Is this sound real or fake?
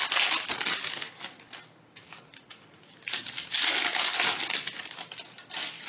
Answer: real